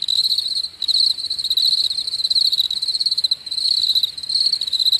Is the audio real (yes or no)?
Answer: yes